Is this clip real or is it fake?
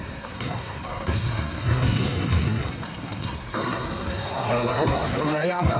fake